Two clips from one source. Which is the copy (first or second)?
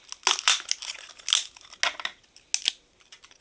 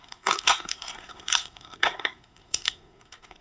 second